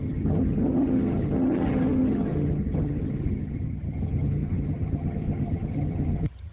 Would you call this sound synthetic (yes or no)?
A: yes